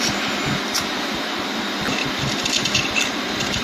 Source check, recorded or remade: recorded